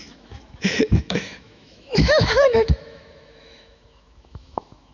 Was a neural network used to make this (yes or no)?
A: yes